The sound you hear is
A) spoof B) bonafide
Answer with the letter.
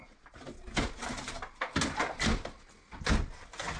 B